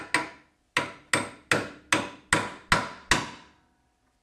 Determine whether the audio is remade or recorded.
recorded